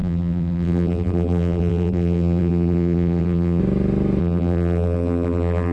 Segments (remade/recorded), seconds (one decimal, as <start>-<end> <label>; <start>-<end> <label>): 0.0-3.6 remade; 3.6-4.2 recorded; 4.2-5.7 remade